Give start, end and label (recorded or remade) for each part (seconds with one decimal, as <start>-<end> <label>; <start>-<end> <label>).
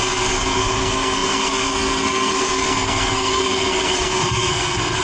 0.0-5.0 remade